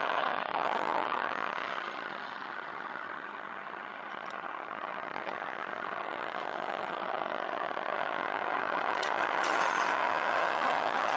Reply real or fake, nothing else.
fake